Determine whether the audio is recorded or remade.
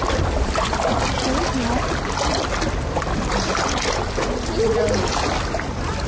recorded